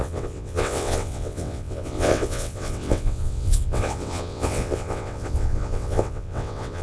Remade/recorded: remade